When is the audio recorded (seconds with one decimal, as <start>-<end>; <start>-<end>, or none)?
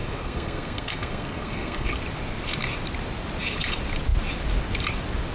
1.9-5.3